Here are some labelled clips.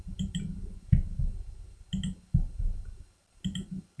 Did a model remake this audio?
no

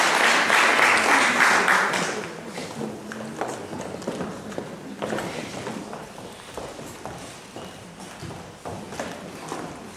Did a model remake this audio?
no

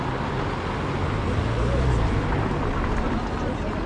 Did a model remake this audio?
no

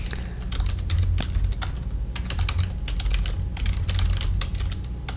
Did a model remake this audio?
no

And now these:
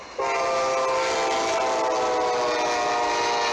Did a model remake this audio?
no